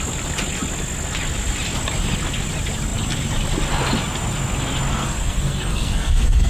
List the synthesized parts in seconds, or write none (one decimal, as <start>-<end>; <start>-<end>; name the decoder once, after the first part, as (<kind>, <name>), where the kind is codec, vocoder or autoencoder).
4.9-6.5 (codec, SNAC)